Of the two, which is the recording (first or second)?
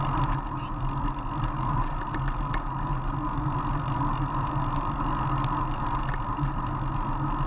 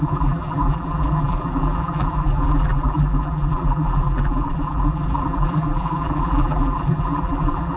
first